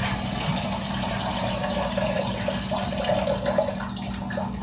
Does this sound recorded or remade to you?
recorded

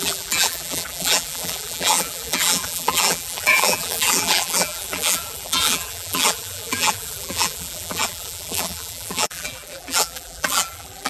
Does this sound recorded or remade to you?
remade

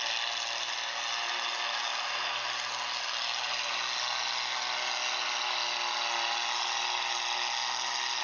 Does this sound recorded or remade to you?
recorded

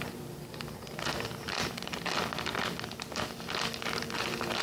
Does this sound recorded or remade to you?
recorded